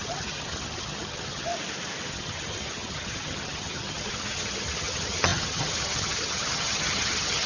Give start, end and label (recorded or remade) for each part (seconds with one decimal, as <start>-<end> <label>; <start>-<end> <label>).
0.0-1.5 remade; 1.5-2.1 recorded; 2.1-7.5 remade

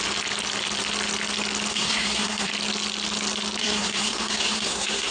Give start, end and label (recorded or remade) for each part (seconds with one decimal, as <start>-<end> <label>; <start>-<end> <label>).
0.0-1.7 recorded; 1.7-2.5 remade; 2.5-3.6 recorded; 3.6-5.1 remade

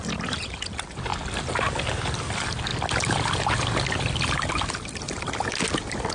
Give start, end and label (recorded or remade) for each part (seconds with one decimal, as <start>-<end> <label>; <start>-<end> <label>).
0.0-6.1 recorded

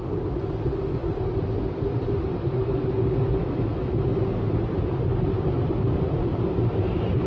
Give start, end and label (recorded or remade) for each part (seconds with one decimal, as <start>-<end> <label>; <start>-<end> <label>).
0.0-3.4 recorded; 3.4-3.9 remade; 3.9-7.3 recorded

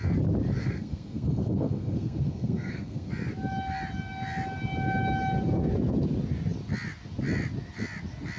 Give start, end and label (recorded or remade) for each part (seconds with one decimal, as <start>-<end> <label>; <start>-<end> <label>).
0.0-0.6 recorded; 0.6-3.1 remade; 3.1-8.4 recorded

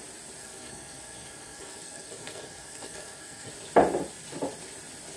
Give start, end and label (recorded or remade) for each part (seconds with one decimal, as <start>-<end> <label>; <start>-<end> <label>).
0.0-0.4 recorded; 0.4-3.5 remade; 3.5-5.2 recorded